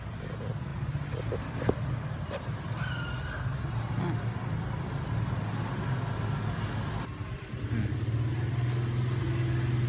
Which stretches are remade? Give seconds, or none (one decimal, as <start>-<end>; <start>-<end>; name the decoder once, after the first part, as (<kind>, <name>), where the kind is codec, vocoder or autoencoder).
none